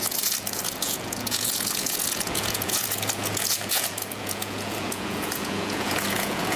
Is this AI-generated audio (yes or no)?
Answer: yes